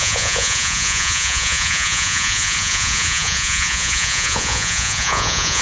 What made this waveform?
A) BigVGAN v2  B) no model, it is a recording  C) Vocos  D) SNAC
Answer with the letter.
C